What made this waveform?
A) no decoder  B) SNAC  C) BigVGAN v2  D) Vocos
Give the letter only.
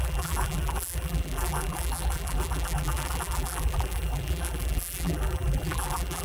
C